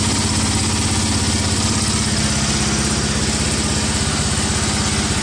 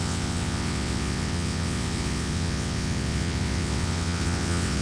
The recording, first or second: first